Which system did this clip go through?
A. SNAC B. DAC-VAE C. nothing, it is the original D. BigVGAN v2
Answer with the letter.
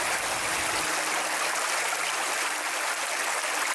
C